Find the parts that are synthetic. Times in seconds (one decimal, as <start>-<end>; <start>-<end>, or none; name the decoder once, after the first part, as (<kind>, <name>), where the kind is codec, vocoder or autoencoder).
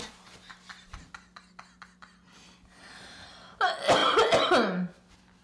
none